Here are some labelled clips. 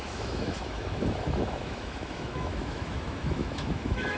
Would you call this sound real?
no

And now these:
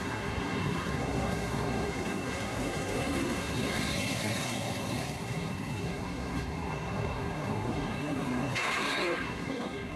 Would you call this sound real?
no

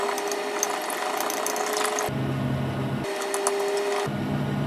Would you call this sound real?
yes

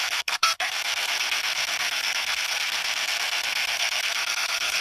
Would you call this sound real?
no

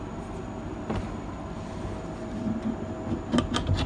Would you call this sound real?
yes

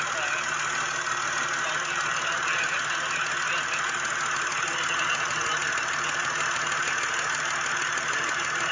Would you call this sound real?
yes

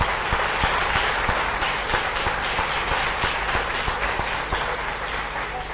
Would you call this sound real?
yes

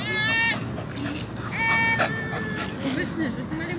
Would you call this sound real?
yes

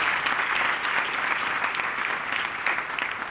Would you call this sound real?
yes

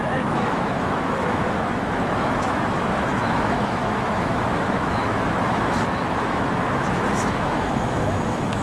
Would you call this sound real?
no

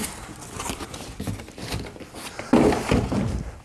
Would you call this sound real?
yes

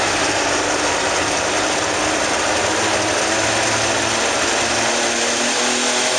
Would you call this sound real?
yes